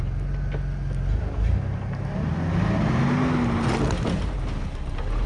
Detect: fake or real real